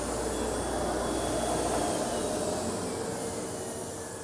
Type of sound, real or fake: real